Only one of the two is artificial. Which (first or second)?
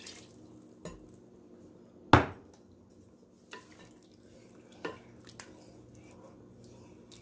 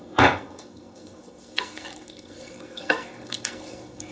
second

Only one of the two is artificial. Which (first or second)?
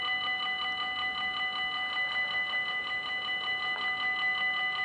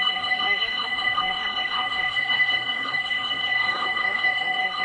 second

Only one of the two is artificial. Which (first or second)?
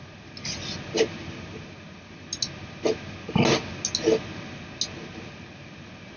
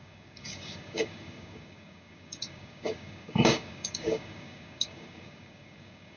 second